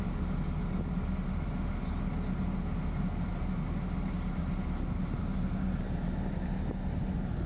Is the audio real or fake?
real